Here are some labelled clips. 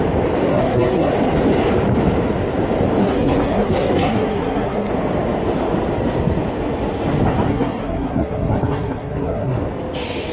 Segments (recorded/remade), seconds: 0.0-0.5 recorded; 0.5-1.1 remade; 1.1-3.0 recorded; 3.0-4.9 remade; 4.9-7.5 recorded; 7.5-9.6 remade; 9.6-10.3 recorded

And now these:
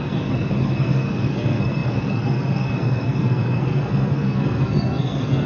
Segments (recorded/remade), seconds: 0.0-5.5 remade

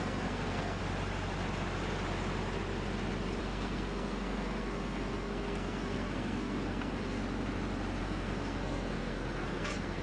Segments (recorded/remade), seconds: 0.0-0.8 remade; 0.8-3.4 recorded; 3.4-7.2 remade; 7.2-8.0 recorded; 8.0-10.0 remade

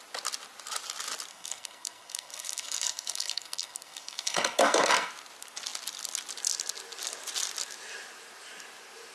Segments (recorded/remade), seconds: 0.0-1.3 recorded; 1.3-5.1 remade; 5.1-9.1 recorded

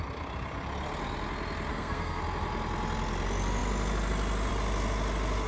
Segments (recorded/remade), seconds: 0.0-1.7 recorded; 1.7-2.2 remade; 2.2-5.5 recorded

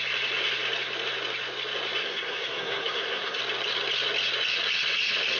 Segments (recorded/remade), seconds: 0.0-2.0 recorded; 2.0-3.4 remade; 3.4-5.4 recorded